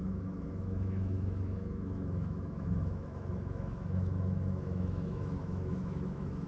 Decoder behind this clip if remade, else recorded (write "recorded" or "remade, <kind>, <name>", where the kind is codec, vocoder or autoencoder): remade, autoencoder, DAC-VAE